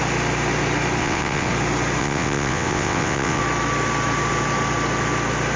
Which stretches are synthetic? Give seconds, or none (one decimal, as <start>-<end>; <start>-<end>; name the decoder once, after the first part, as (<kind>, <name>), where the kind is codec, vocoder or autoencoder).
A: 1.0-1.5 (vocoder, WaveNeXt); 2.0-3.4